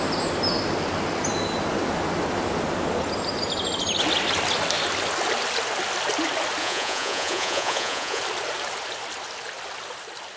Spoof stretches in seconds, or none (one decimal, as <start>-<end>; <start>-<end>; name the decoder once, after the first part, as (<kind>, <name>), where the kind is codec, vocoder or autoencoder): 6.6-8.2 (vocoder, Vocos)

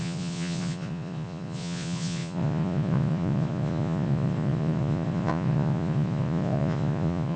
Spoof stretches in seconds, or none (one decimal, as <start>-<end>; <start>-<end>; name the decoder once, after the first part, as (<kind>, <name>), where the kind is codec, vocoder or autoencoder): 0.0-7.4 (vocoder, Vocos)